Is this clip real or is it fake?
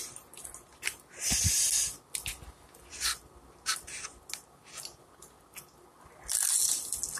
real